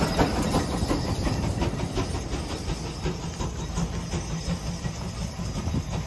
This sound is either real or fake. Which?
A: real